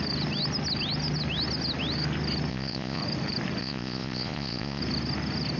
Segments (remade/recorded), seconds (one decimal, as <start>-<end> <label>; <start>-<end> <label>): 0.0-2.5 recorded; 2.5-3.0 remade; 3.0-3.6 recorded; 3.6-4.8 remade; 4.8-5.6 recorded